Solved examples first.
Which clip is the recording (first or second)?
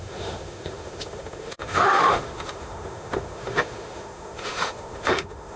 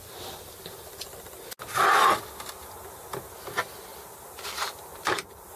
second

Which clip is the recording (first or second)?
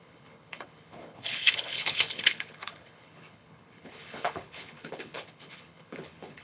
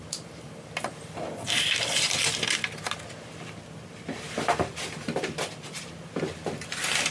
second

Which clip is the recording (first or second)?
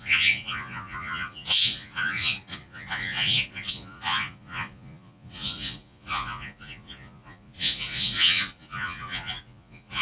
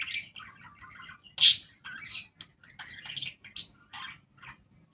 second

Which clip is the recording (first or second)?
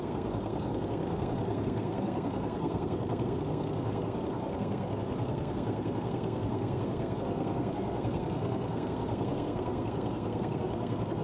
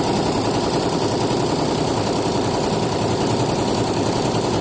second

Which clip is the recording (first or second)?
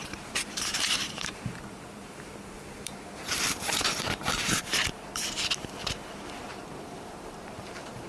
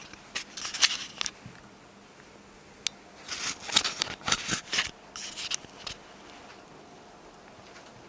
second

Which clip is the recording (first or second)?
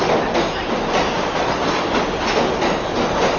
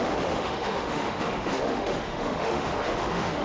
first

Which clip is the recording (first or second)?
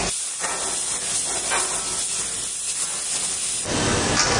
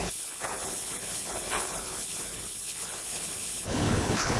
first